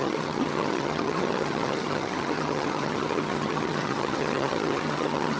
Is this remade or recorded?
remade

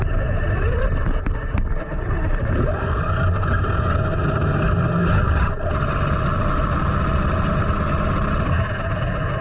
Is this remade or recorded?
recorded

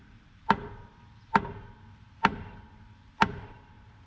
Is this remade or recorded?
remade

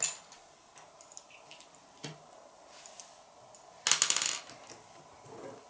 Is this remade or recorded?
recorded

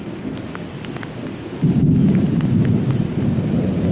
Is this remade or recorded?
recorded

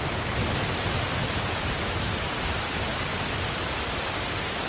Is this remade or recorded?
recorded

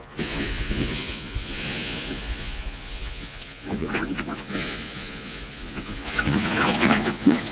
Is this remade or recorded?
remade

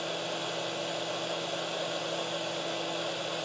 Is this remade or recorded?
recorded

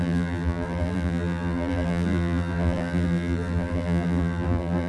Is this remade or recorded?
remade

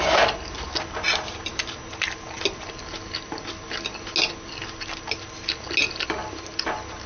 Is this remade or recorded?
recorded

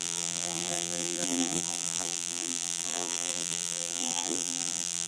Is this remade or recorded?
remade